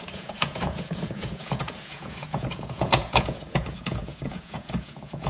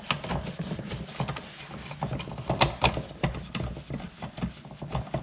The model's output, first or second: first